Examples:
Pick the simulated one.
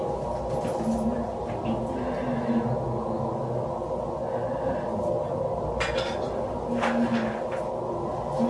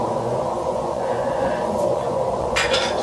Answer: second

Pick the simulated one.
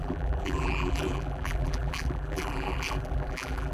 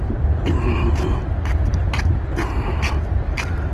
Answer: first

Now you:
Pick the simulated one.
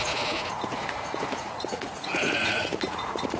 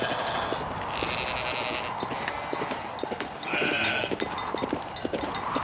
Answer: first